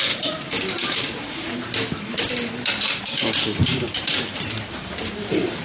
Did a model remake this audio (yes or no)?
yes